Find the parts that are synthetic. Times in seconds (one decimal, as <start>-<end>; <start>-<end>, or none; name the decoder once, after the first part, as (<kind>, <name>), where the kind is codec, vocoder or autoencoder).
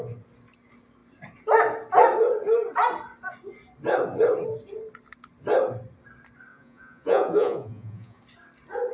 6.5-8.2 (vocoder, Vocos)